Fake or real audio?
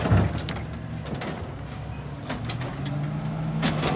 real